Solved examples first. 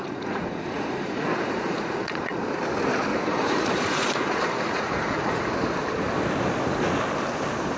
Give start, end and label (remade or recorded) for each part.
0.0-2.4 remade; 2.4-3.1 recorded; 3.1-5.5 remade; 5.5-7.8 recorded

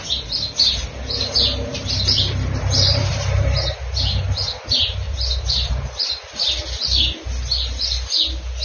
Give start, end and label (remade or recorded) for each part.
0.0-1.8 recorded; 1.8-7.0 remade; 7.0-8.6 recorded

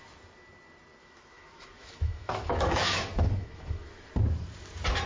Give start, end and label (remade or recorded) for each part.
0.0-1.0 recorded; 1.0-4.1 remade; 4.1-5.1 recorded

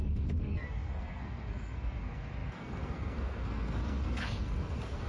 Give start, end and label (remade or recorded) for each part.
0.0-5.1 remade

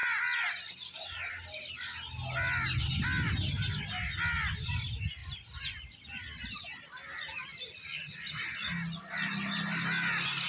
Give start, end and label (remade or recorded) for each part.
0.0-5.2 recorded; 5.2-6.0 remade; 6.0-10.5 recorded